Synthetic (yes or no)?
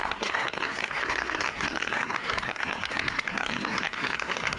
yes